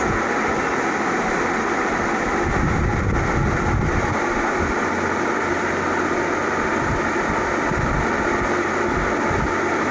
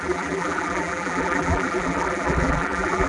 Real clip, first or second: first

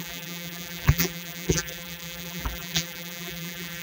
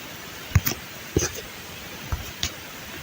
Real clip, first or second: second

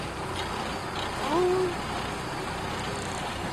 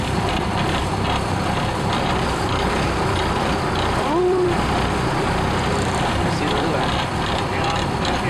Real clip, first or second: first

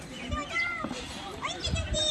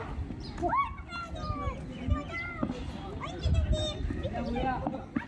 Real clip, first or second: second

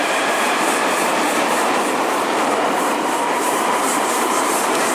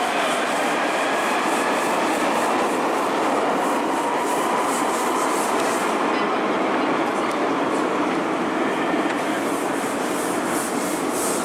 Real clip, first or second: second